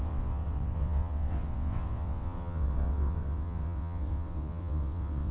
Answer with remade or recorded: remade